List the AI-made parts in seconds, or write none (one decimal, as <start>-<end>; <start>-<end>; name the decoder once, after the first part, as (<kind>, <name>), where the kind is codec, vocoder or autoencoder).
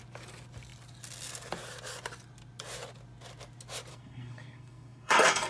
3.9-5.5 (codec, SNAC)